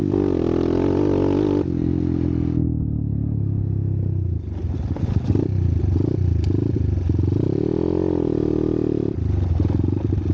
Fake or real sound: real